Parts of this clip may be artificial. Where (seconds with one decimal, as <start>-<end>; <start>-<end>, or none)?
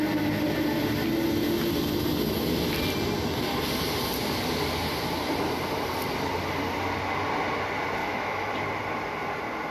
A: 8.0-8.5